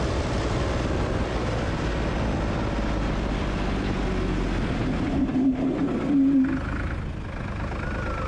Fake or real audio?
real